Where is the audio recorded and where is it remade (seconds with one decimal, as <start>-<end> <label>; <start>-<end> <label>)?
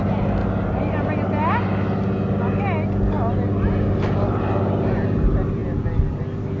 0.0-6.6 recorded